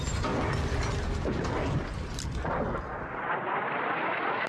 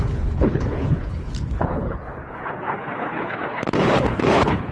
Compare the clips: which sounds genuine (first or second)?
first